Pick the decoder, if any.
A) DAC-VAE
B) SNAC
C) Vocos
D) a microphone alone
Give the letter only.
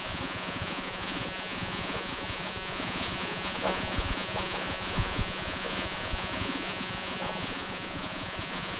C